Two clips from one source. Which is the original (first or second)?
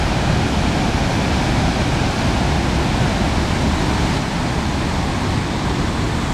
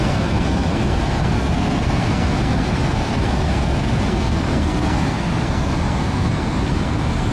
first